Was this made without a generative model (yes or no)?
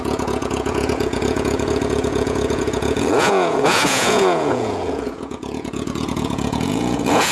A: no